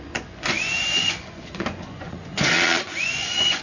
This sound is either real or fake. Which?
fake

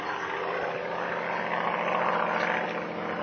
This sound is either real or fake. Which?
real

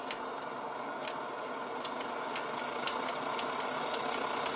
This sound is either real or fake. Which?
real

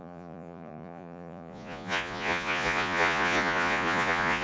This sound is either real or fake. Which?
fake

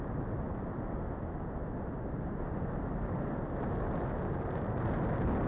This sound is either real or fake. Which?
real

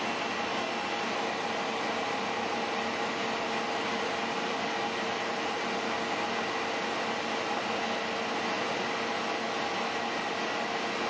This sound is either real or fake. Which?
real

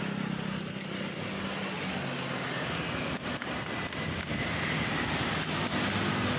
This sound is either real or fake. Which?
real